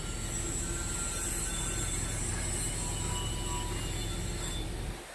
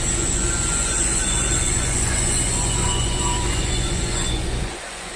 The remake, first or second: second